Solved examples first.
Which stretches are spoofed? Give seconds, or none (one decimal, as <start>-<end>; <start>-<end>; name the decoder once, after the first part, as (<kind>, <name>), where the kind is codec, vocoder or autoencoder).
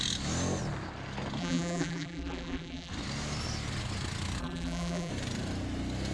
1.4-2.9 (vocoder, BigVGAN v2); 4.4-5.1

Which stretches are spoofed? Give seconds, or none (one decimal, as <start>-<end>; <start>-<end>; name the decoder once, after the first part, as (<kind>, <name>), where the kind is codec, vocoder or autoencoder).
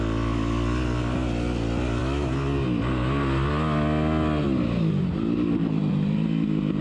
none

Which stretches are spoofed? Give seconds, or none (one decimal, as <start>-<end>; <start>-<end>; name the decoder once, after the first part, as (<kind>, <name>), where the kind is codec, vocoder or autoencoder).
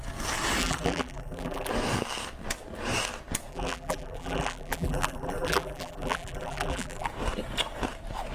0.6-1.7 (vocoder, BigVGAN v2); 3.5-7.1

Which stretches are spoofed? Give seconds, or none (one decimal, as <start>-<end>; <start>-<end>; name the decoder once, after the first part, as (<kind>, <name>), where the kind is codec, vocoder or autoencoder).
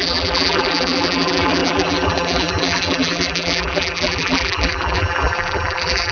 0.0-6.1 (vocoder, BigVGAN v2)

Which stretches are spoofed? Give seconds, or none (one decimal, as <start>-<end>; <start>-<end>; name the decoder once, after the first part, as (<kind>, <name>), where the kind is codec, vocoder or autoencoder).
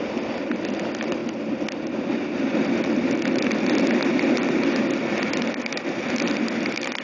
none